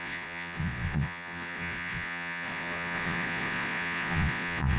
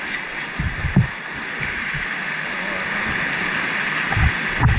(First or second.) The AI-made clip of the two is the first